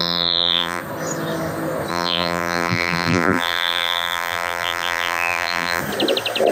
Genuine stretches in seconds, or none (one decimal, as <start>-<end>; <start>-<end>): 0.8-1.9; 5.8-6.5